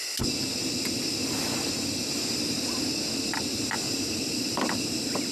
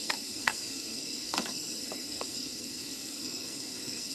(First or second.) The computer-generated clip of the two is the second